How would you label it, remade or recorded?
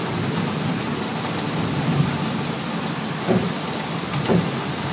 recorded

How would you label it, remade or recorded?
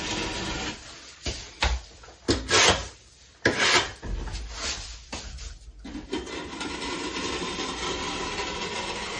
recorded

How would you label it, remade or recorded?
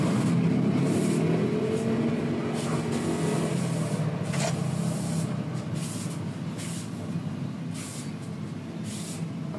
recorded